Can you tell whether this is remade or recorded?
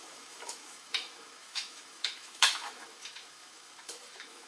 remade